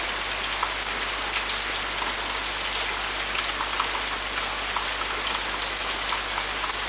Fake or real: real